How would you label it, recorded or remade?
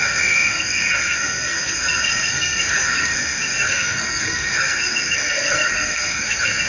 remade